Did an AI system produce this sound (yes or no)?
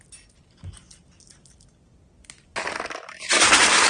no